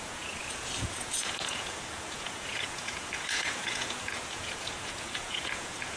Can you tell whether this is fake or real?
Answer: fake